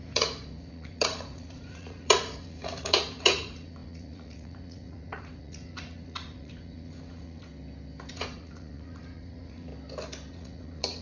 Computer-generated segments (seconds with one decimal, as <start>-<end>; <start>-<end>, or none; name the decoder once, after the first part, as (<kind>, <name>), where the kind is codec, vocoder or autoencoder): 0.0-7.5 (vocoder, Vocos); 8.1-9.7; 10.3-11.0